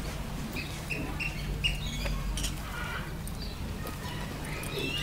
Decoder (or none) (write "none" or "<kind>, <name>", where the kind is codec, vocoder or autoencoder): none